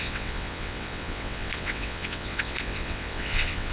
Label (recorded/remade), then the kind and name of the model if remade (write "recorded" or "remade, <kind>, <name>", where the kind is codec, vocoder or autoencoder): remade, vocoder, WaveNeXt